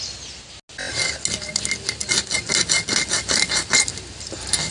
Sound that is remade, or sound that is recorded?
recorded